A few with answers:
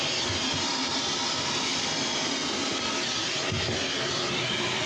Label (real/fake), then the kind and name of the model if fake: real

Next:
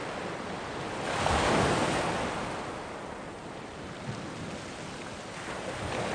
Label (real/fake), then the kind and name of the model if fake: real